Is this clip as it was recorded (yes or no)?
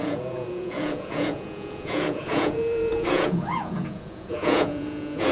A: no